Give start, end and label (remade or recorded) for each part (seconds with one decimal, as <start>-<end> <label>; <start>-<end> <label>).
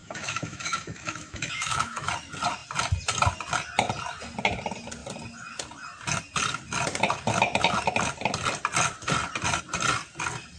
0.0-2.1 remade; 2.1-10.6 recorded